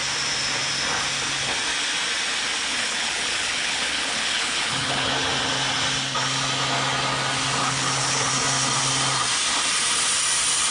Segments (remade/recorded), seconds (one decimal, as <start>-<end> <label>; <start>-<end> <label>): 0.0-2.7 recorded; 2.7-5.1 remade; 5.1-7.6 recorded; 7.6-8.3 remade; 8.3-10.7 recorded